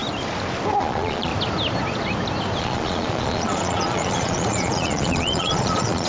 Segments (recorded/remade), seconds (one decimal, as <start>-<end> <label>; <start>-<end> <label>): 0.0-0.8 recorded; 0.8-1.3 remade; 1.3-2.6 recorded; 2.6-6.1 remade

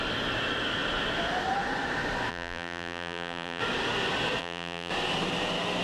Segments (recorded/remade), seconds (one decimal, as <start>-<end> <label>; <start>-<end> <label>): 0.0-2.3 recorded; 2.3-3.6 remade; 3.6-4.4 recorded; 4.4-4.9 remade; 4.9-5.8 recorded

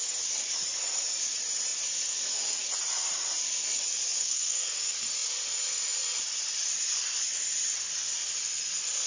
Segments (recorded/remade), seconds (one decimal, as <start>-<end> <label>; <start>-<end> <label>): 0.0-4.2 recorded; 4.2-4.8 remade; 4.8-9.1 recorded

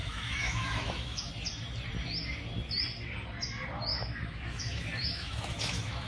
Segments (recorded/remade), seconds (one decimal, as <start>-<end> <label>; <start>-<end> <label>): 0.0-1.3 remade; 1.3-3.9 recorded; 3.9-6.1 remade

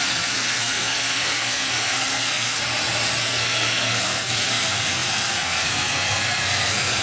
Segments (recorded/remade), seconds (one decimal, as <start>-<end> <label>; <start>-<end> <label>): 0.0-2.6 remade; 2.6-3.2 recorded; 3.2-7.0 remade

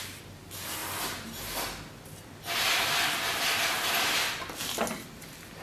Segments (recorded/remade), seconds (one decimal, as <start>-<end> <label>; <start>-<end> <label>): 0.0-5.6 recorded